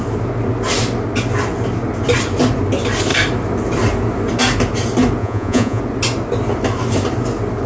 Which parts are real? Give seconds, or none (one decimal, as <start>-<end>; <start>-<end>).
0.0-5.2; 5.8-7.7